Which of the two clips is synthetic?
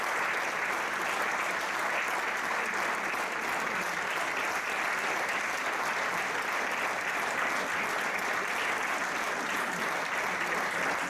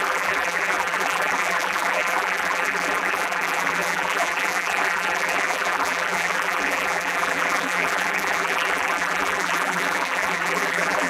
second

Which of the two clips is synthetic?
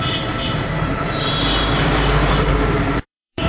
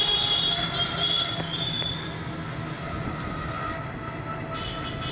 first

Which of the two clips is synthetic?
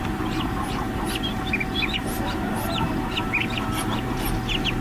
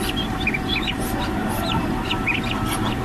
second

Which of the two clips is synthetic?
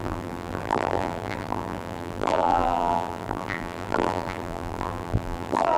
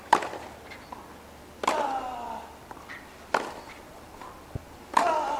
first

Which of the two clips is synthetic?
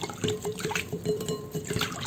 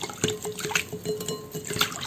first